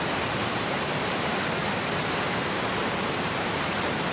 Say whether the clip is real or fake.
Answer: fake